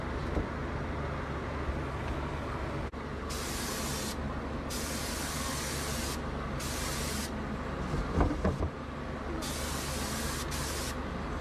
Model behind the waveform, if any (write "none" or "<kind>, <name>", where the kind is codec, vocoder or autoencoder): none